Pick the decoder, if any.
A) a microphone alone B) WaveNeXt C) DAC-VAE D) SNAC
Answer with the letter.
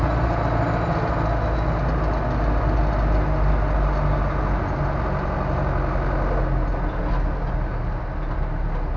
A